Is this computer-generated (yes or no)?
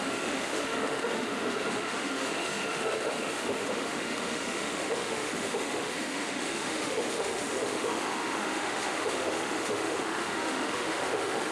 yes